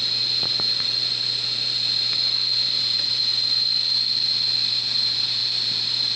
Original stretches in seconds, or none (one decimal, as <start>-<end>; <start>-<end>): 0.0-6.2